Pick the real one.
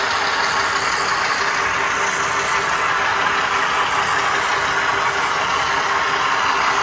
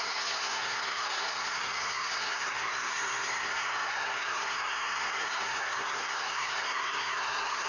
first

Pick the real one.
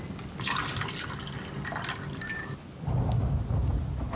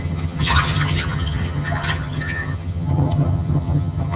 first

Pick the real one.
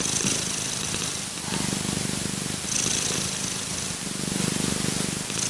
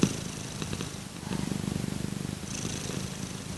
first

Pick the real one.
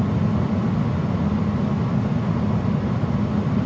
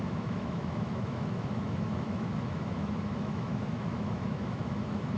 first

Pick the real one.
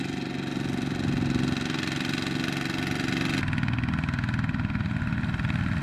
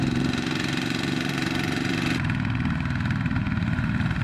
first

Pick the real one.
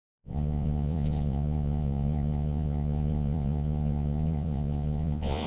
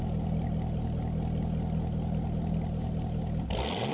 second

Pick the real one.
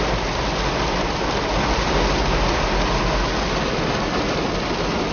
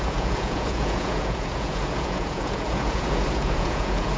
first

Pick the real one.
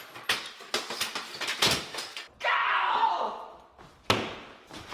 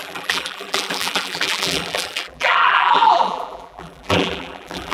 first